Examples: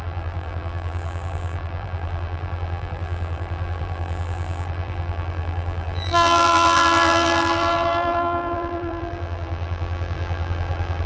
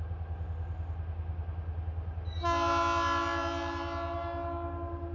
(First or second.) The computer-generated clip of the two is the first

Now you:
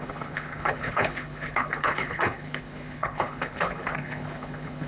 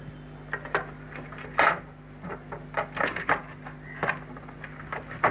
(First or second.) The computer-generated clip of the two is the first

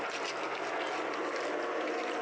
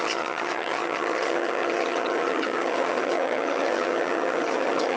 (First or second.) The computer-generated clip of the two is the second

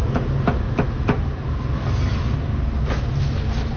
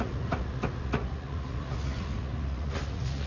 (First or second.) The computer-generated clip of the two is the second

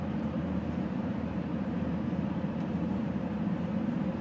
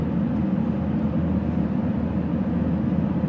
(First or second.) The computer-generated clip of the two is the first